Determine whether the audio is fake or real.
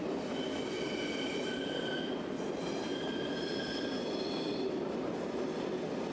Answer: fake